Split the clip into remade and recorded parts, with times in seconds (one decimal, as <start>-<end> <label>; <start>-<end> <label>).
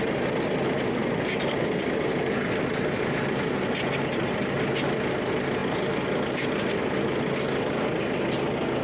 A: 0.0-8.8 recorded